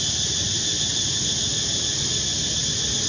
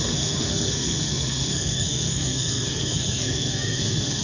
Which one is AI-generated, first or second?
second